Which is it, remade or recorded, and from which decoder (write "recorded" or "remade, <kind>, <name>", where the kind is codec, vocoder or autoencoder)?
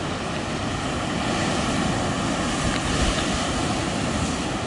recorded